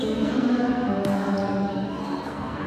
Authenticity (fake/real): fake